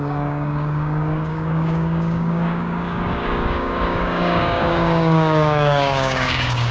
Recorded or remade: remade